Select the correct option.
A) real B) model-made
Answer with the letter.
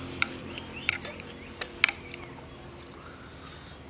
A